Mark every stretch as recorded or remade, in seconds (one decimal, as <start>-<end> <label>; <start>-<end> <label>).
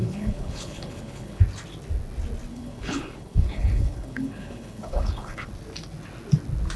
0.0-1.4 remade; 1.4-2.5 recorded; 2.5-5.5 remade; 5.5-6.8 recorded